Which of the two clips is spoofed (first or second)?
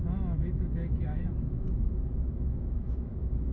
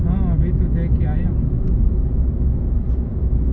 first